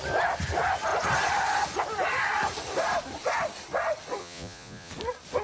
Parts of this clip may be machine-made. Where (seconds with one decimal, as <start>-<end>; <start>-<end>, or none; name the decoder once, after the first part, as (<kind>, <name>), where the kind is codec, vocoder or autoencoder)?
4.2-4.9 (vocoder, Vocos)